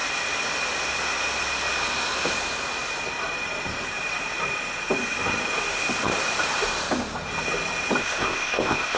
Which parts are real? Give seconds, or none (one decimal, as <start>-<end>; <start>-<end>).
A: 0.0-8.0